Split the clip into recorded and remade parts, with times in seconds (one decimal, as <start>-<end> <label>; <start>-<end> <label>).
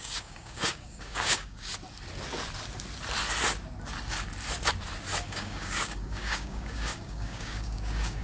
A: 0.0-1.7 remade; 1.7-5.3 recorded; 5.3-8.2 remade